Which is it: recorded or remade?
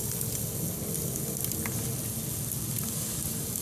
recorded